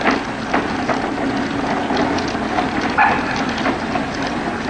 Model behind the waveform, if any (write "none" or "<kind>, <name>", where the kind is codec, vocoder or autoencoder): none